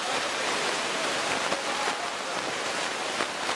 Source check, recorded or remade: recorded